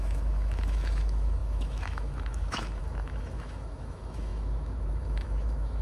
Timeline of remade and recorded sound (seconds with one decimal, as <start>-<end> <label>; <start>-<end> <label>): 0.0-5.8 remade